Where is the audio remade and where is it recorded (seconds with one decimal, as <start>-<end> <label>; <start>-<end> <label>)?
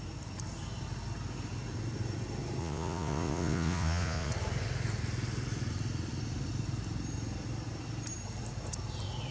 0.0-2.6 recorded; 2.6-4.3 remade; 4.3-9.3 recorded